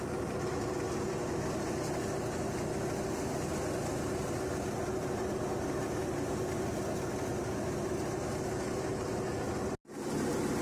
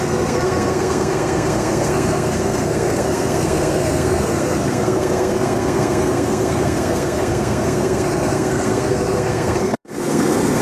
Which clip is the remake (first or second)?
second